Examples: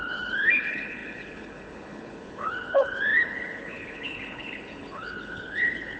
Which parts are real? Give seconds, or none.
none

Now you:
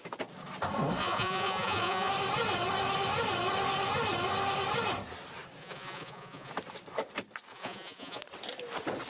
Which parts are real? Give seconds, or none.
0.0-1.0; 2.1-5.6; 6.5-7.5; 8.2-9.1

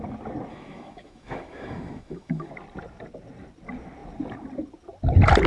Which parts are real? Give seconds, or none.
0.0-0.5; 2.5-5.5

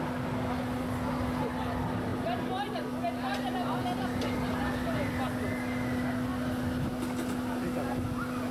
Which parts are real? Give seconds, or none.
0.0-8.5

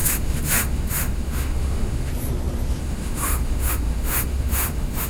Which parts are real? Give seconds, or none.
2.1-2.8